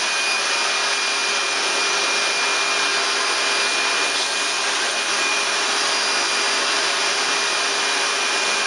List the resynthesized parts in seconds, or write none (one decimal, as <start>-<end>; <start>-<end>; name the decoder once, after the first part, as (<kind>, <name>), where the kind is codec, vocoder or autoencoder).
none